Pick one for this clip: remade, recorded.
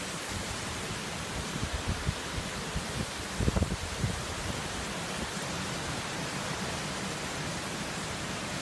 remade